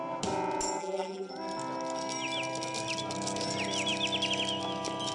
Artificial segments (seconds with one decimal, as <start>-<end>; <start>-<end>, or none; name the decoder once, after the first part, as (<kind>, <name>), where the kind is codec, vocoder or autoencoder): 0.8-1.3 (vocoder, BigVGAN v2)